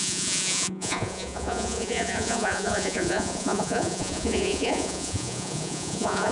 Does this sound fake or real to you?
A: fake